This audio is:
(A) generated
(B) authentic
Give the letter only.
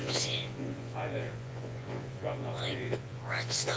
A